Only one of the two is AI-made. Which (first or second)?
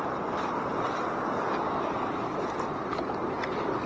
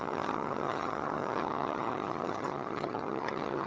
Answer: second